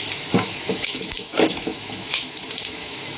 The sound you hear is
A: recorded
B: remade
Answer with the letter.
B